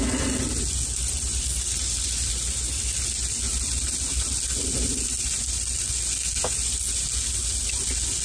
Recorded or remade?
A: recorded